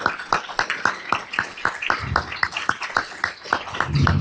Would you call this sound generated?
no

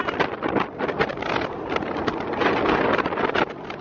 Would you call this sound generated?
yes